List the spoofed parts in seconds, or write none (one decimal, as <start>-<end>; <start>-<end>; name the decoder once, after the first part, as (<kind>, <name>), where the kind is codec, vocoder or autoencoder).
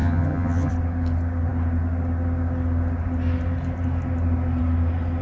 0.0-0.7 (vocoder, HiFi-GAN)